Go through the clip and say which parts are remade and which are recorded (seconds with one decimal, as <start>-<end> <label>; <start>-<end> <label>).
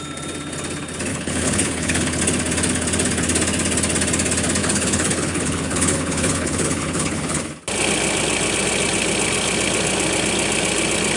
0.0-1.1 recorded; 1.1-2.2 remade; 2.2-4.6 recorded; 4.6-7.4 remade; 7.4-11.2 recorded